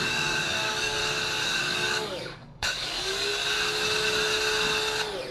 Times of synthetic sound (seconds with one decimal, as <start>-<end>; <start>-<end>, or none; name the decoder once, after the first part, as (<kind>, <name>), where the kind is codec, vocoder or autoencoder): 0.0-1.0 (codec, DAC); 1.6-3.3